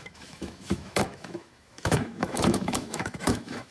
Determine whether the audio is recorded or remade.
remade